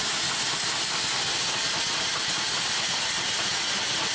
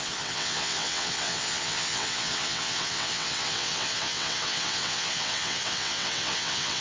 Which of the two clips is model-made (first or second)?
second